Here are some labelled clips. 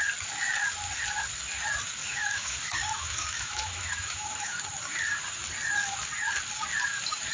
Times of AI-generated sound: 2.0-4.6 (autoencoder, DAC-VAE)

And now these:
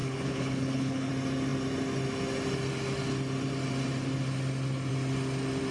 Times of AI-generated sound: 0.0-1.1 (codec, HILCodec)

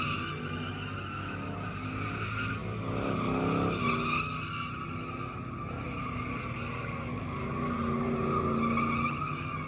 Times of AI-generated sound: none

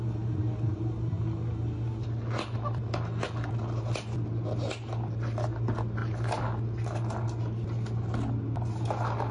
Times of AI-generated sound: none

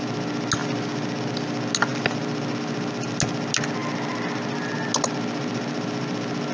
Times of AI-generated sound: none

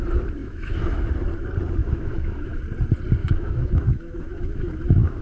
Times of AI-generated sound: 0.4-1.0 (autoencoder, DAC-VAE); 1.8-2.6; 3.2-5.2

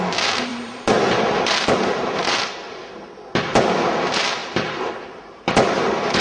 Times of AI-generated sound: 0.5-2.3 (vocoder, BigVGAN v2)

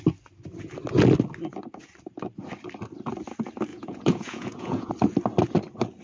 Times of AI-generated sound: 3.7-4.9 (vocoder, Vocos)